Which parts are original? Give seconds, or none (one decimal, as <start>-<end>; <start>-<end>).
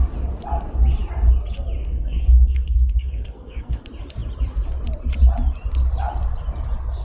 0.0-1.8; 3.8-7.0